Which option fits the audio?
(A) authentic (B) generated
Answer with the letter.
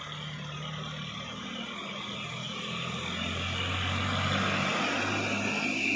A